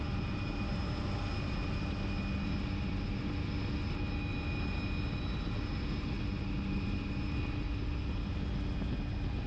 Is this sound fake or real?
real